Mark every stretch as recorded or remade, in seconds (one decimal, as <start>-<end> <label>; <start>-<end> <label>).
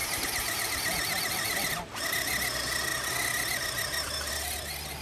0.0-1.7 remade; 1.7-5.0 recorded